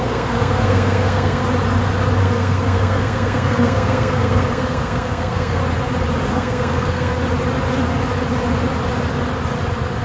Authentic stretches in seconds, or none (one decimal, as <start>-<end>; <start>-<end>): 1.4-2.2; 5.6-6.3; 7.1-10.0